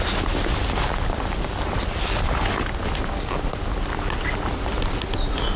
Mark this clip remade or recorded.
recorded